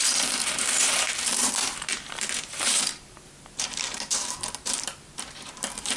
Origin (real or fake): fake